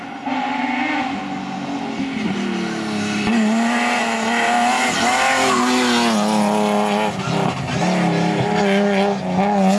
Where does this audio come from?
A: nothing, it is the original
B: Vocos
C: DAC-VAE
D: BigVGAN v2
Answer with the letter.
A